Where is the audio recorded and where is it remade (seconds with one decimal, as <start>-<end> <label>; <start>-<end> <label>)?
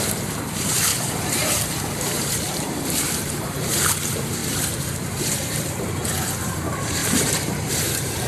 0.0-8.3 remade